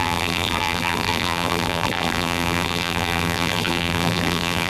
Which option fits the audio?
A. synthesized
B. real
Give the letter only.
A